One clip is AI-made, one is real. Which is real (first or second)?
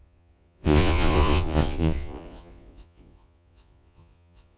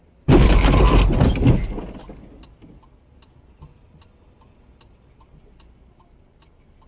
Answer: second